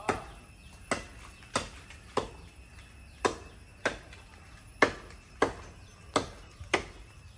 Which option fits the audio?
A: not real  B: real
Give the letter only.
B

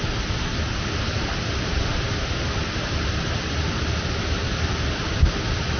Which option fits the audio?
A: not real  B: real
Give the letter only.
B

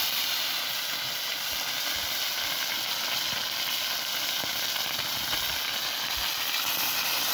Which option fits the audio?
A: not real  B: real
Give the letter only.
B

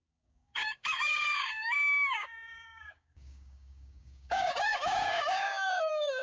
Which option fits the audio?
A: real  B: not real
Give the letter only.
B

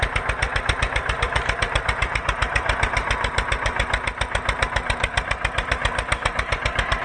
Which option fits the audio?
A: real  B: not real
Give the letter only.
B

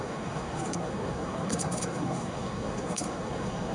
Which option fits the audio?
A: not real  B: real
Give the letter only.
A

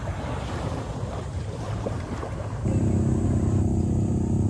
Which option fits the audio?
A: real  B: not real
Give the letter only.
B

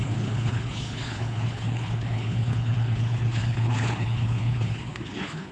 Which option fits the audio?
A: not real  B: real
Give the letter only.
A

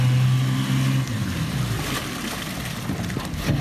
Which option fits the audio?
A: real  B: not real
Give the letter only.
A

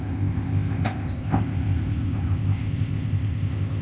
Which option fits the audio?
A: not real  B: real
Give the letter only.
A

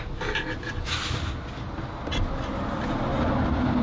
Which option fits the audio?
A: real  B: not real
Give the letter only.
A